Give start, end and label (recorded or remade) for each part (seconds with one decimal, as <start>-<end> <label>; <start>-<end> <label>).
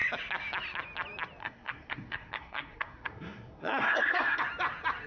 0.0-1.4 recorded; 1.4-4.4 remade; 4.4-5.1 recorded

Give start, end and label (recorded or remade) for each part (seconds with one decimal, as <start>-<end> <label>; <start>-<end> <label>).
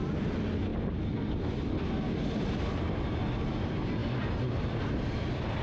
0.0-5.6 recorded